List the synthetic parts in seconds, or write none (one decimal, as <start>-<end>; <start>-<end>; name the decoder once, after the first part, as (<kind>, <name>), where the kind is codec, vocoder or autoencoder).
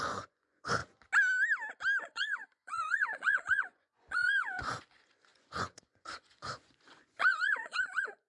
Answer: 0.0-0.8 (vocoder, Vocos); 2.0-8.3